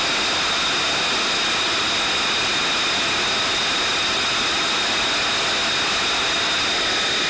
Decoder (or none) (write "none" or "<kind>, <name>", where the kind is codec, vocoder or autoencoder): none